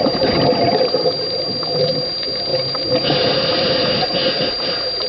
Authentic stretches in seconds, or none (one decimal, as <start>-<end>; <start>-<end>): 0.0-5.1